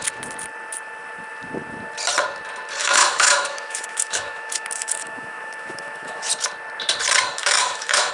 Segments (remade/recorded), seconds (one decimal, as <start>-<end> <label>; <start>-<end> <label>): 0.0-2.8 recorded; 2.8-6.3 remade; 6.3-7.4 recorded; 7.4-8.1 remade